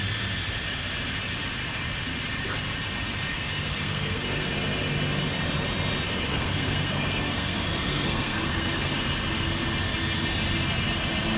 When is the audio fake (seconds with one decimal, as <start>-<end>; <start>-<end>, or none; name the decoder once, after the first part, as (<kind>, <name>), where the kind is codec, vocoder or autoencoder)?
3.3-4.5 (codec, SNAC); 6.3-8.9